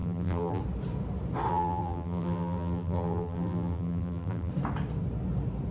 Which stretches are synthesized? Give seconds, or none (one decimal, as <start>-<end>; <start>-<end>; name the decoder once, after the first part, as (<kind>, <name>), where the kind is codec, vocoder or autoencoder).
0.0-0.6 (vocoder, BigVGAN v2); 1.5-4.5